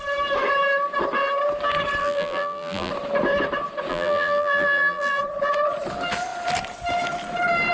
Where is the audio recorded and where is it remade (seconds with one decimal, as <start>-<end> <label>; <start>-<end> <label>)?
0.0-2.0 recorded; 2.0-2.9 remade; 2.9-3.9 recorded; 3.9-5.2 remade; 5.2-7.7 recorded